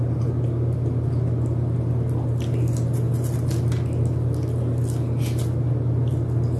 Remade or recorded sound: recorded